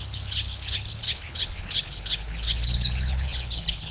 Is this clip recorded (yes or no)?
no